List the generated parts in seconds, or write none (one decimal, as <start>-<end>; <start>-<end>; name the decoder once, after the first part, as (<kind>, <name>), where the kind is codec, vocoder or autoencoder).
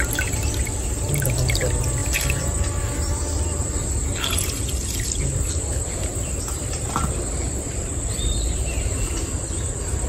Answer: none